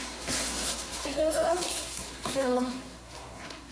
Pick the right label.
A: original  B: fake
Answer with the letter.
B